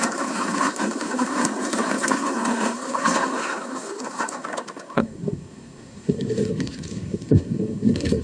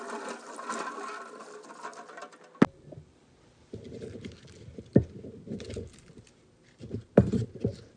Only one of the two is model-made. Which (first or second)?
first